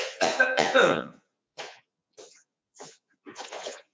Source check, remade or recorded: remade